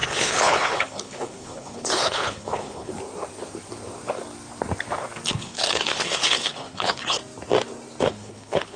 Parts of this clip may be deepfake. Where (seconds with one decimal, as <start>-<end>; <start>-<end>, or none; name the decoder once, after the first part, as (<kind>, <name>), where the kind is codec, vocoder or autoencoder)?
0.0-2.9 (codec, HILCodec); 5.3-7.2; 8.0-8.8